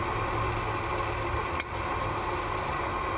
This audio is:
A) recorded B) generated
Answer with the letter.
A